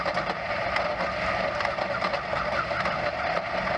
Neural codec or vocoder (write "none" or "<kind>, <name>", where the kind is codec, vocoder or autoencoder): none